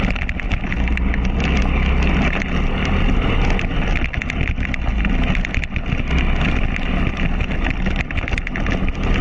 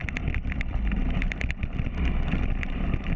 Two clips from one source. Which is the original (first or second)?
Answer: first